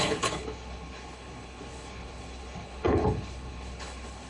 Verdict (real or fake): fake